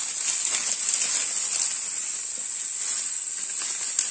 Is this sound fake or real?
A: real